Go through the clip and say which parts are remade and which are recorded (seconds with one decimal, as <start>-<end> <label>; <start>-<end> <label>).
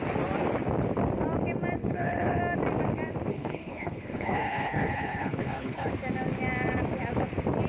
0.0-1.8 recorded; 1.8-2.4 remade; 2.4-3.3 recorded; 3.3-5.9 remade; 5.9-7.7 recorded